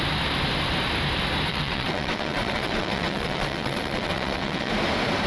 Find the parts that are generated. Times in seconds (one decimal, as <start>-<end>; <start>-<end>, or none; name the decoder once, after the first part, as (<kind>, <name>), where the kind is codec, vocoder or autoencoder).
1.5-4.7 (vocoder, WaveNeXt)